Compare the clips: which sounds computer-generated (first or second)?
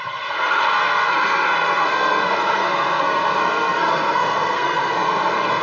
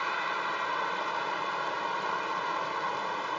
first